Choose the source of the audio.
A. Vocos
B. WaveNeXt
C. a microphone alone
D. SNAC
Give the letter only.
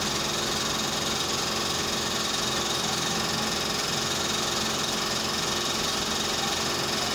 C